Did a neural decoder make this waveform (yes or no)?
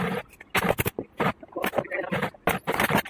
no